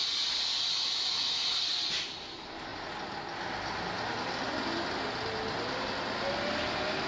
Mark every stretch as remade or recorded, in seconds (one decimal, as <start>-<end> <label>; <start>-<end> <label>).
0.0-7.1 recorded